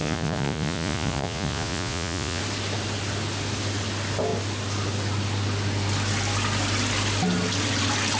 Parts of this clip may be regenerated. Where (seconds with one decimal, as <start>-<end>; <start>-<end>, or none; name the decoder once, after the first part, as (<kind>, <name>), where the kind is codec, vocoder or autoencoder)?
0.0-2.4 (vocoder, Vocos)